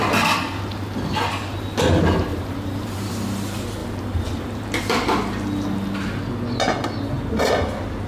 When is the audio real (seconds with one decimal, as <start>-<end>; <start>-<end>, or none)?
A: 0.0-2.3; 3.1-3.8; 4.8-8.1